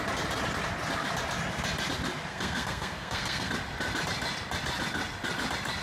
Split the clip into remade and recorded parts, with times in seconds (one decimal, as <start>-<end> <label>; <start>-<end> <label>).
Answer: 0.0-2.3 recorded; 2.3-3.5 remade; 3.5-5.8 recorded